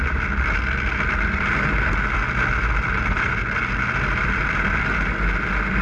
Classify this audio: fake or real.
real